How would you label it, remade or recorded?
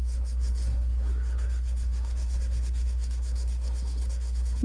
remade